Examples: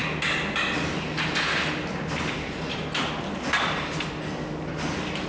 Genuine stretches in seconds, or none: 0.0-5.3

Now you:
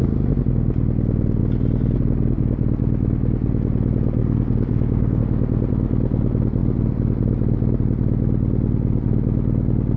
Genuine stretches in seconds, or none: 0.0-4.2; 5.2-10.0

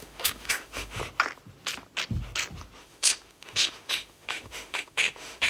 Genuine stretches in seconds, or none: 1.0-2.8

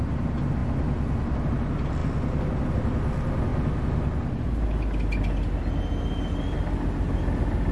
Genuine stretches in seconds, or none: 0.0-7.7

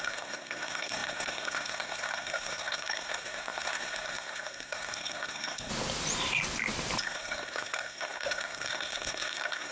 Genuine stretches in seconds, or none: 5.7-7.0